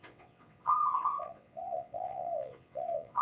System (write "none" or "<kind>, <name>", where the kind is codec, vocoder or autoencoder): vocoder, WaveNeXt